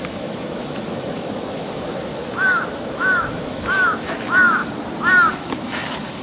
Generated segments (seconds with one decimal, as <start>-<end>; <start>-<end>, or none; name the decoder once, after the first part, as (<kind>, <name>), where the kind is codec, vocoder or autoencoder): 0.0-4.6 (autoencoder, DAC-VAE); 5.3-6.2